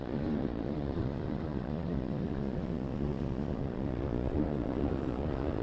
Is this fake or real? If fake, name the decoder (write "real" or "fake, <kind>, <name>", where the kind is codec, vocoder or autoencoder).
fake, vocoder, Vocos